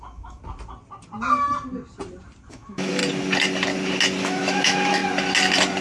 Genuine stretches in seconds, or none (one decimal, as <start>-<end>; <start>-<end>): 0.4-2.5; 3.0-4.2; 5.0-5.8